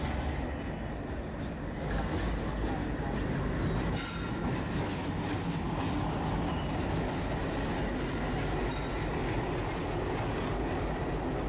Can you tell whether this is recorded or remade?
recorded